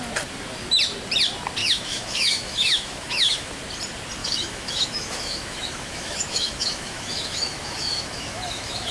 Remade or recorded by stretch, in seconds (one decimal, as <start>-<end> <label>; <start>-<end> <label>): 0.0-1.6 recorded; 1.6-3.5 remade; 3.5-4.2 recorded; 4.2-8.9 remade